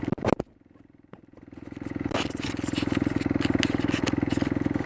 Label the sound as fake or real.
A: real